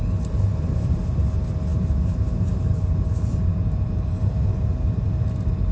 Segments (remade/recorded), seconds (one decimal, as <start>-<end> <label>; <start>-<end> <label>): 0.0-0.5 recorded; 0.5-1.0 remade; 1.0-1.7 recorded; 1.7-5.1 remade; 5.1-5.7 recorded